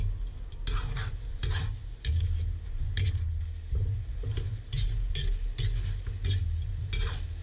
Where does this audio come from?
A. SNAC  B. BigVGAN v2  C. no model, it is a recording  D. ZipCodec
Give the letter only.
C